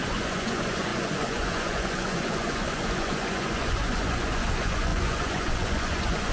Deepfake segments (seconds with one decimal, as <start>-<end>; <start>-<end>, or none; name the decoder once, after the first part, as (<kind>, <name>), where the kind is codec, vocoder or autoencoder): 0.0-6.3 (vocoder, Vocos)